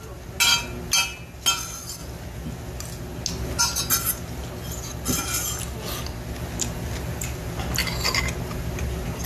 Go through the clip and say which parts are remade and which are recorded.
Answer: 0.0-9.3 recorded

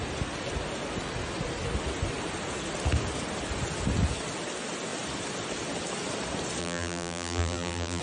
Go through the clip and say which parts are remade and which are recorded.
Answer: 0.0-6.6 recorded; 6.6-8.0 remade

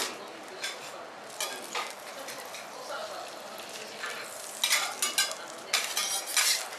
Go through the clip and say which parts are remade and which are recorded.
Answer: 0.0-6.8 recorded

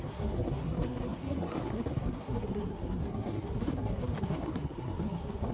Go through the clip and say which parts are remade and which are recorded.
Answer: 0.0-5.5 remade